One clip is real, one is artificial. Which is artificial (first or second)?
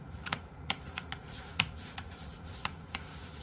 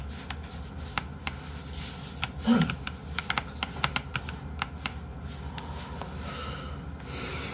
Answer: first